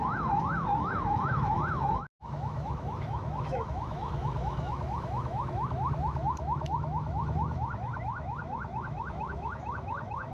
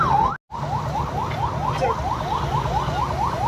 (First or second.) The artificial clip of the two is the first